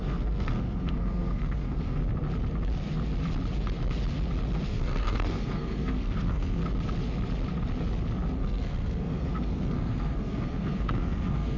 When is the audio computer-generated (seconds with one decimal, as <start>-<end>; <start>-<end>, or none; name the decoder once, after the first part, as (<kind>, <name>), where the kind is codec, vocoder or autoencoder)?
0.0-2.0 (codec, SNAC); 4.7-6.6; 8.4-11.6